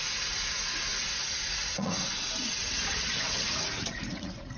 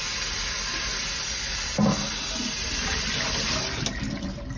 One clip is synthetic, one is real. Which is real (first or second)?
second